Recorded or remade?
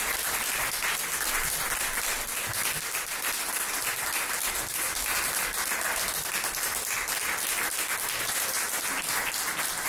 recorded